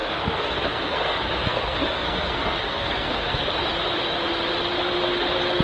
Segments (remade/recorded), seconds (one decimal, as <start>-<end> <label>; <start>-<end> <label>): 0.0-3.4 remade; 3.4-5.6 recorded